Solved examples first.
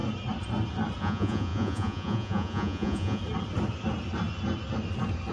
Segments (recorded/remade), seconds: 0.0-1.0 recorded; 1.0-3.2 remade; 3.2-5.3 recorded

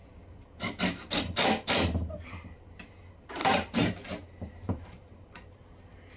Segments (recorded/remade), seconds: 0.0-3.4 recorded; 3.4-5.3 remade; 5.3-6.2 recorded

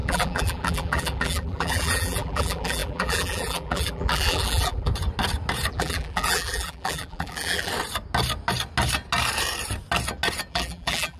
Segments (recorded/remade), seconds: 0.0-4.9 remade; 4.9-5.7 recorded; 5.7-7.7 remade; 7.7-10.5 recorded; 10.5-11.2 remade

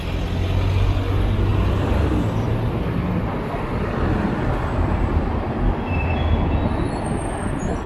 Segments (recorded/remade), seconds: 0.0-7.9 recorded

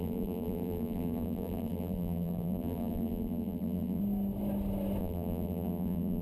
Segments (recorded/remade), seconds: 0.0-4.0 remade; 4.0-5.0 recorded; 5.0-6.2 remade